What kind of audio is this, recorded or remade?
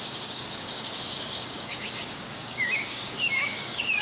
remade